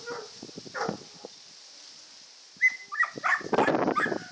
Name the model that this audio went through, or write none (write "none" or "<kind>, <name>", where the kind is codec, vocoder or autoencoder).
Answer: none